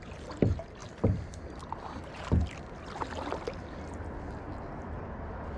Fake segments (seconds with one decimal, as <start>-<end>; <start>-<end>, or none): none